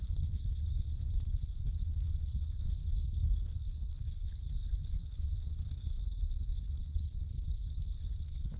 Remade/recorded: remade